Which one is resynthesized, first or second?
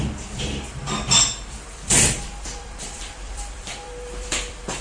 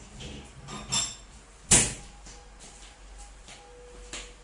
first